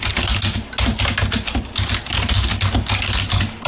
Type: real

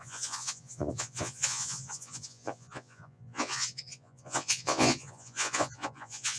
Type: fake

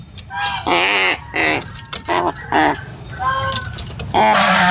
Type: real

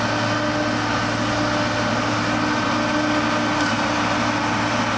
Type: real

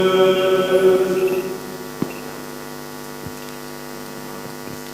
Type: real